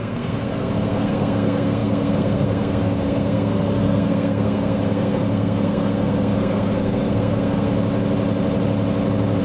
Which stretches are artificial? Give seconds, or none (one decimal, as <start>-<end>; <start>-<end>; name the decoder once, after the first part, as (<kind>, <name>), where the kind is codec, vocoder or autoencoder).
0.0-7.7 (codec, SNAC)